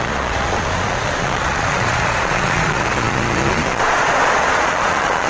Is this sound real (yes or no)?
no